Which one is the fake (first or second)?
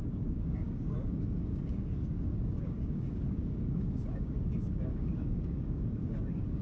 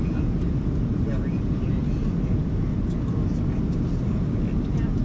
first